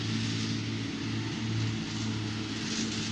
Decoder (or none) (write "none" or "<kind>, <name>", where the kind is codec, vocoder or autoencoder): none